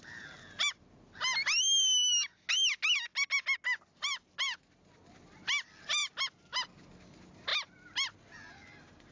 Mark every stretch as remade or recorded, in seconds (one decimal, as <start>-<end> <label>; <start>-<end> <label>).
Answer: 0.0-9.1 recorded